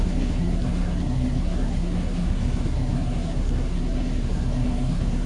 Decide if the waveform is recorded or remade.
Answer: remade